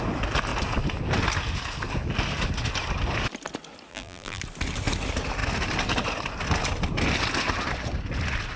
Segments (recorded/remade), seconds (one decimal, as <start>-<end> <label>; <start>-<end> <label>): 0.0-3.9 recorded; 3.9-4.4 remade; 4.4-8.6 recorded